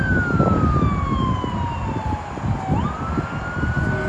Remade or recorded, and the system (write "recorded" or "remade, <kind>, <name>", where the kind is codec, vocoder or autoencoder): recorded